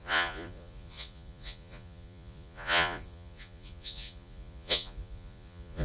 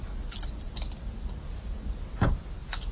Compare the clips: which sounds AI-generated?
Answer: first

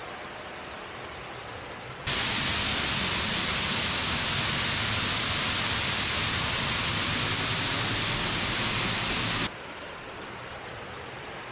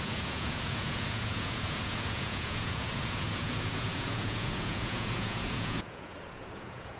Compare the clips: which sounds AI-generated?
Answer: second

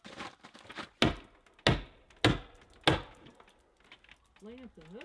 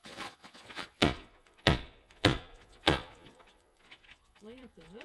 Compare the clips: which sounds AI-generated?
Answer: second